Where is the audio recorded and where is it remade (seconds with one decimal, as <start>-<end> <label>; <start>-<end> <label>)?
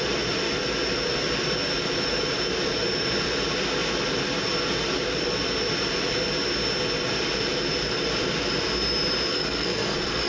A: 0.0-9.3 recorded; 9.3-10.3 remade